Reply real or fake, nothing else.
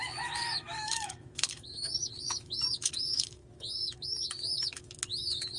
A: fake